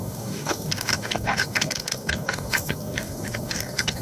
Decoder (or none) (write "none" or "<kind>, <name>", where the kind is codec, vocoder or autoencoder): codec, DAC